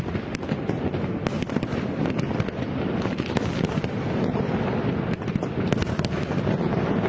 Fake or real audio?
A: real